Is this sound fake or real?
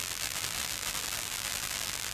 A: fake